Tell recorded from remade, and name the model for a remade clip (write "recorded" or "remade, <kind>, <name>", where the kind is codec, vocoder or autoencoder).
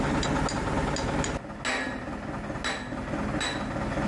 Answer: recorded